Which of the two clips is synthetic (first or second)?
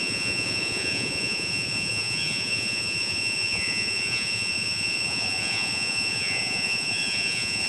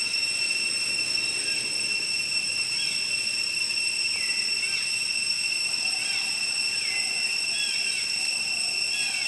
first